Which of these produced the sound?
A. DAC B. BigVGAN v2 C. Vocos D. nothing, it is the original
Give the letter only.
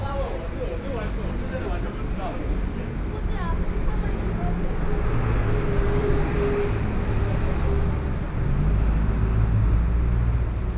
D